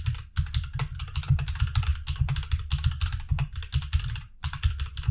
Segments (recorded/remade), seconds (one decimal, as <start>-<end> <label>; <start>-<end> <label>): 0.0-5.1 recorded